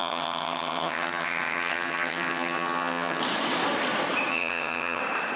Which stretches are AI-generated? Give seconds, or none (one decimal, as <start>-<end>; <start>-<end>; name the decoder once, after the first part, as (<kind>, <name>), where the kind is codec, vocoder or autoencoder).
0.0-3.2 (vocoder, HiFi-GAN); 4.3-5.0